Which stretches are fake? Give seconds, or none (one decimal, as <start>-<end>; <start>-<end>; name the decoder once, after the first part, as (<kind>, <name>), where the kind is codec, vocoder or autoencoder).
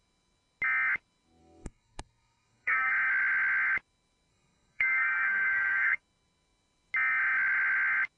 1.4-2.9 (codec, SNAC); 4.3-6.0